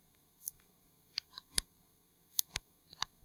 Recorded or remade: remade